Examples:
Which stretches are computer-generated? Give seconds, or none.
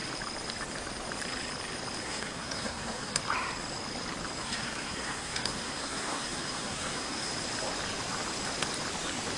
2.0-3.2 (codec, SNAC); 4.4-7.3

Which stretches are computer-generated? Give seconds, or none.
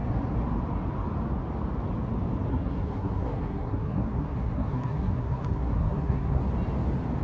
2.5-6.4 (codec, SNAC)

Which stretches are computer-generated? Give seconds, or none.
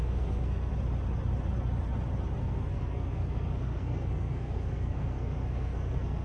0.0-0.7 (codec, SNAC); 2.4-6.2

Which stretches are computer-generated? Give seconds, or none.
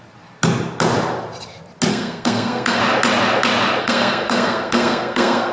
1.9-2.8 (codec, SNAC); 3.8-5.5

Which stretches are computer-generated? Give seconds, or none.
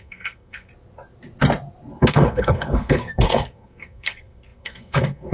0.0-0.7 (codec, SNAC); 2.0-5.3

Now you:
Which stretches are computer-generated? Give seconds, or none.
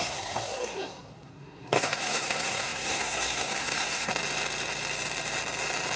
0.0-4.1 (codec, SNAC)